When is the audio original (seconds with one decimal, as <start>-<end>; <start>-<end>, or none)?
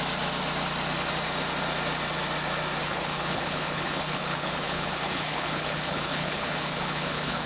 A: 0.0-2.8